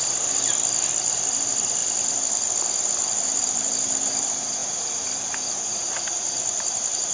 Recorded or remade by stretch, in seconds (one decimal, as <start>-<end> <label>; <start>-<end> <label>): 0.0-7.1 recorded